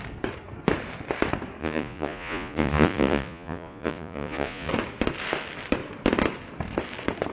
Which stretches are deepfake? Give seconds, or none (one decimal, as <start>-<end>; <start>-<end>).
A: 1.6-4.7